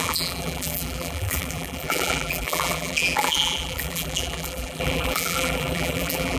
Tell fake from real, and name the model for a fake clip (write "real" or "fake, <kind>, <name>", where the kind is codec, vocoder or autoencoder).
fake, vocoder, BigVGAN v2